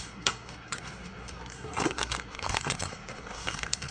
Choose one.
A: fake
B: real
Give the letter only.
A